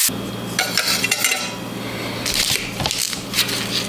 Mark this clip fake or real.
real